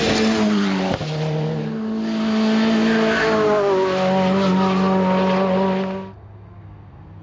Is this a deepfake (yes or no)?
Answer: no